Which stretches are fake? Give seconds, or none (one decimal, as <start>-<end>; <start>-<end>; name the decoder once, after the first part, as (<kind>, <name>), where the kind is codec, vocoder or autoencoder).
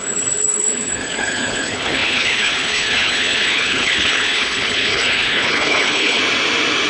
0.0-6.2 (codec, HILCodec)